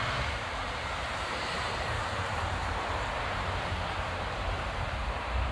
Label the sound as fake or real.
fake